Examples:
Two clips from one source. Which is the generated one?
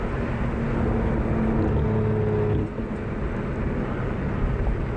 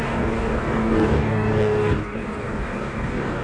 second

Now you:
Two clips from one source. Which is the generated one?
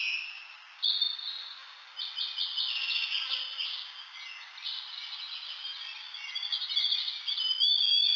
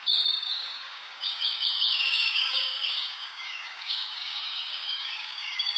second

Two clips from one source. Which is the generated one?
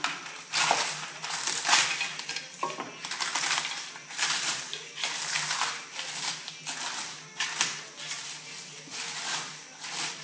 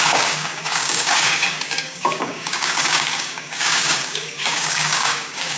second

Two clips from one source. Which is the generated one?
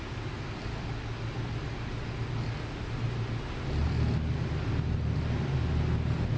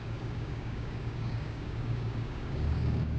second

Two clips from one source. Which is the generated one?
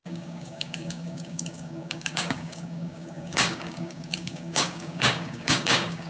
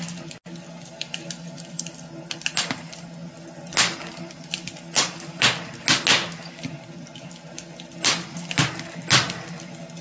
first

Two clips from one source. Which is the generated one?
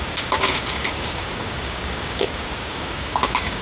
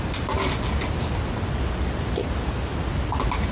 first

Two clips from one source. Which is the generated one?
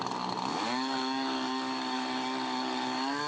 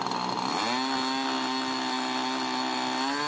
first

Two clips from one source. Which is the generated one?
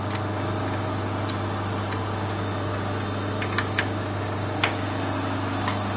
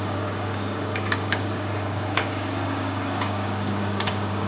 second